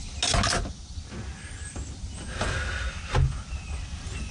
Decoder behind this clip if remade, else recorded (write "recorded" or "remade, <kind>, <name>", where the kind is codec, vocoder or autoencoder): recorded